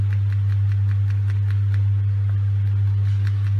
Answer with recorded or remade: recorded